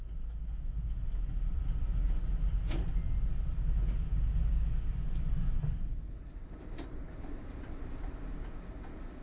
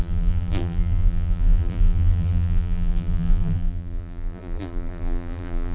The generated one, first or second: second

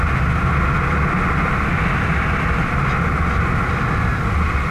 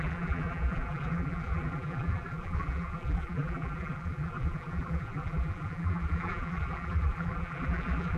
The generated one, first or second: second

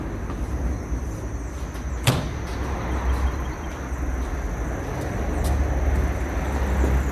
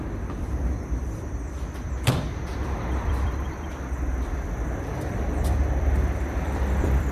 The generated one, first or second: second